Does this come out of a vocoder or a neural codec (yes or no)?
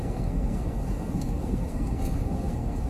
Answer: yes